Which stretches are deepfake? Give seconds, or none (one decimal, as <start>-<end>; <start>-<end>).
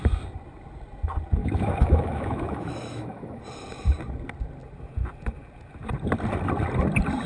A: 1.4-3.4